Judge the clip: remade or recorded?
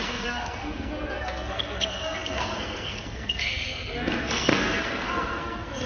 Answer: remade